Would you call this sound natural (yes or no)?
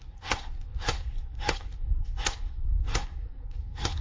no